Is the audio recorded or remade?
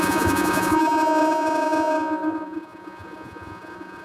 remade